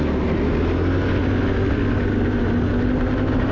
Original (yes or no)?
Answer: yes